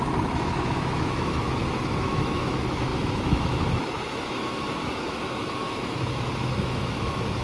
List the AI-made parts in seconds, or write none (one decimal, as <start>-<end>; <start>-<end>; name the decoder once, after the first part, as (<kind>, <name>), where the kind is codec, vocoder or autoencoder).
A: 0.0-7.4 (autoencoder, DAC-VAE)